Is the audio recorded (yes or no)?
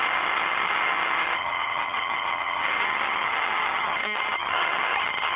no